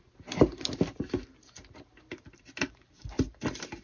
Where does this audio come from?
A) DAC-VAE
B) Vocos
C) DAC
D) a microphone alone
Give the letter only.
D